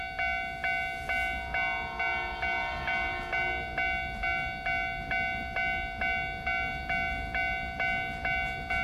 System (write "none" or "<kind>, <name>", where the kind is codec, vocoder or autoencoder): none